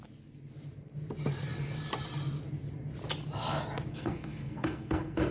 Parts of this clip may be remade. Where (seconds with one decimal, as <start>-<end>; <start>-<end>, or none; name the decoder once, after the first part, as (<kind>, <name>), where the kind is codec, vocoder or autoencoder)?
3.9-5.3 (codec, SNAC)